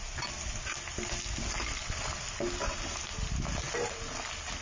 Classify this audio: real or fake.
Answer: real